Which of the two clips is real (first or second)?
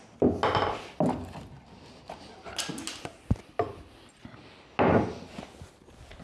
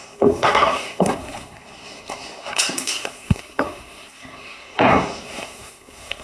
first